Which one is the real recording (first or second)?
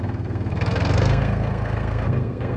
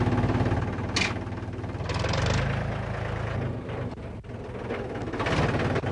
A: second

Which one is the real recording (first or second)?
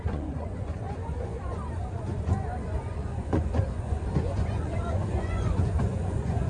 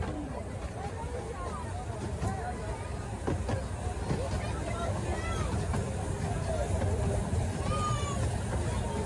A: second